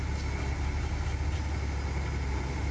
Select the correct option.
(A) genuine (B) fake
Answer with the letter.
A